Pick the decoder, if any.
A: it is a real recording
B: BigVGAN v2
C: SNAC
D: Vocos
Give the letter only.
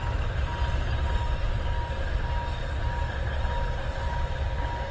A